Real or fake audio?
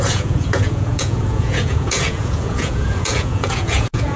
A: fake